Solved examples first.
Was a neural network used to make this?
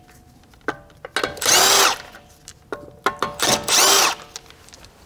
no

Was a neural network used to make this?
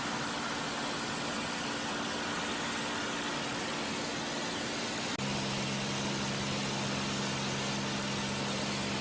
no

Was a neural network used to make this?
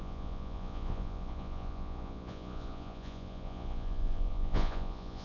yes